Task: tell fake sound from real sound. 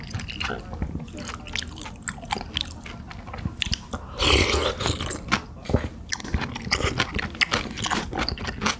real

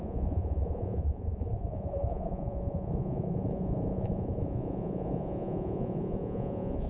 fake